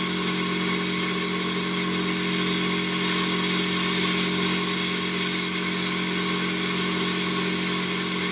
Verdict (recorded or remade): recorded